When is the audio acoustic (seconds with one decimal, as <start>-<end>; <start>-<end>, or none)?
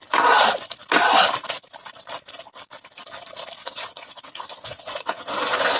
0.0-3.6